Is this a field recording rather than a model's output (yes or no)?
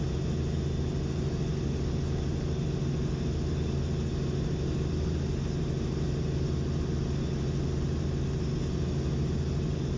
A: yes